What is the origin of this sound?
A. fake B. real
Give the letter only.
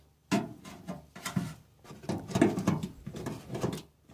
B